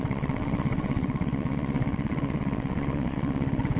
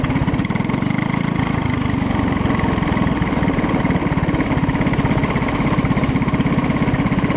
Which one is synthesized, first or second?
first